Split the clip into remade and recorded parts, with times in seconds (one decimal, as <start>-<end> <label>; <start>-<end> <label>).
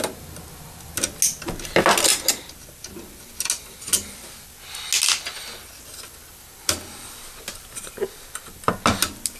0.0-9.4 recorded